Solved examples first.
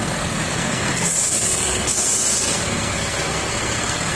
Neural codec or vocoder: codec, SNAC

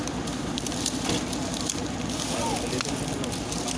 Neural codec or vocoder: none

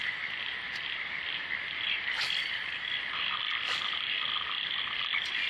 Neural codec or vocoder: none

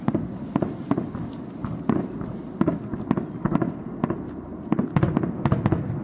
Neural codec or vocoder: none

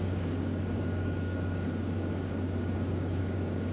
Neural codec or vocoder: codec, DAC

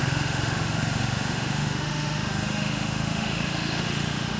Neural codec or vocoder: autoencoder, DAC-VAE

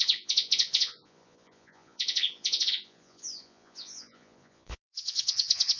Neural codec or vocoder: vocoder, Vocos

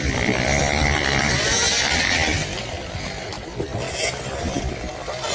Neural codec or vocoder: none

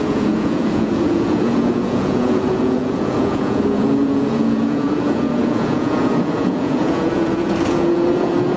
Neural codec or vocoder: vocoder, Vocos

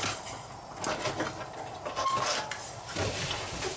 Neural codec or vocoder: none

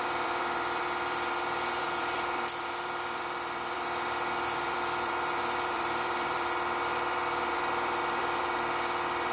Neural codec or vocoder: vocoder, BigVGAN v2